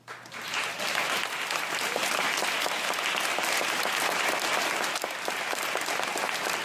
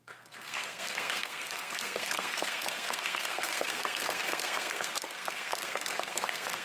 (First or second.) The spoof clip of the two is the second